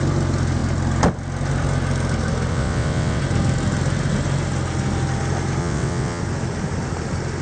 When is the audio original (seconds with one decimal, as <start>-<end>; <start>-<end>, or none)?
0.0-2.5; 3.2-5.6; 6.2-7.4